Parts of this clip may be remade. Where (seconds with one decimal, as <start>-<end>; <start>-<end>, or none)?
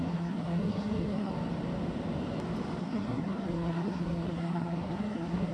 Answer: 0.0-1.3; 2.8-5.5